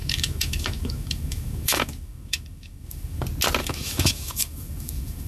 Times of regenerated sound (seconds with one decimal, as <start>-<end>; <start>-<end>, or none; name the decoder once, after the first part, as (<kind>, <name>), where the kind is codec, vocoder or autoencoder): 0.0-3.2 (autoencoder, DAC-VAE); 3.6-5.3